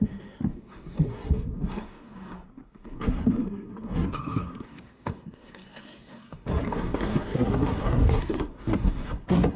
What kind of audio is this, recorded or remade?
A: remade